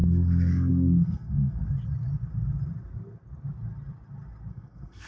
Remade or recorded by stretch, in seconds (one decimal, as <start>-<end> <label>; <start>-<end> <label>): 0.0-1.6 remade; 1.6-4.5 recorded; 4.5-5.1 remade